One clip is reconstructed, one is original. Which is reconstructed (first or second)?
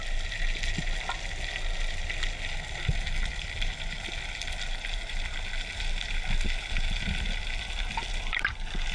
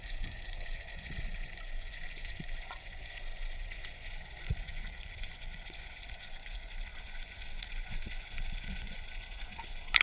second